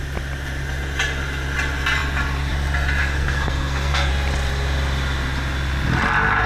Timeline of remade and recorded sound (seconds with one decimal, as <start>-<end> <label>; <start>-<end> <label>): 0.0-3.0 recorded; 3.0-4.1 remade; 4.1-6.5 recorded